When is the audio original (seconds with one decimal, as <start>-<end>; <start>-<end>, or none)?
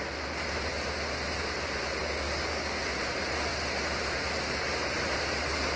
0.0-2.0; 2.8-5.8